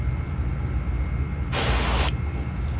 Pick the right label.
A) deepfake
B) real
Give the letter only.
B